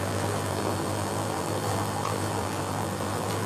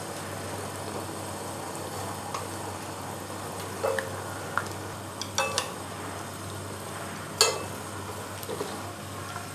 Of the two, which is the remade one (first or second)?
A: first